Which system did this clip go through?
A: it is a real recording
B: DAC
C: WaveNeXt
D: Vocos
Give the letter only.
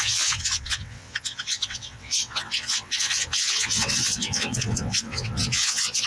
C